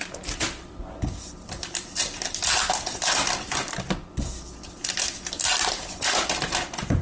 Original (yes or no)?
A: yes